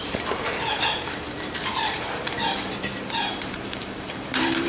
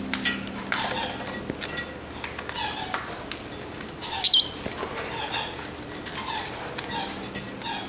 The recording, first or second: second